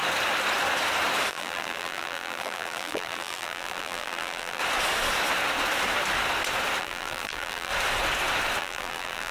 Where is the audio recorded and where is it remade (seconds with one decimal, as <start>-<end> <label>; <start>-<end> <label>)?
0.0-1.3 recorded; 1.3-4.6 remade; 4.6-6.8 recorded; 6.8-7.7 remade; 7.7-8.6 recorded; 8.6-9.3 remade